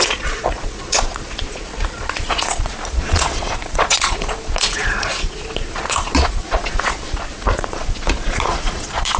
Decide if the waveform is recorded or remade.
remade